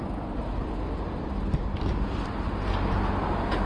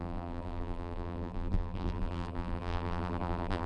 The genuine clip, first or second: first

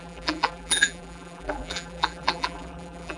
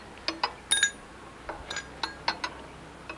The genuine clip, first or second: second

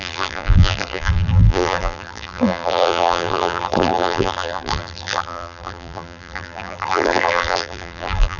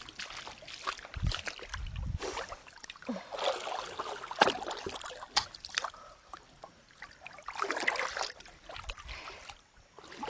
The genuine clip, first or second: second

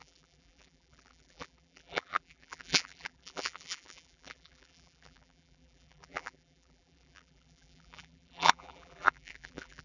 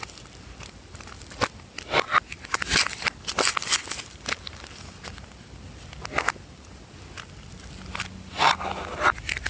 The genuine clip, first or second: second